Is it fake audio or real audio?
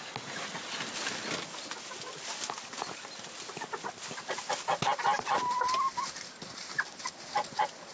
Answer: real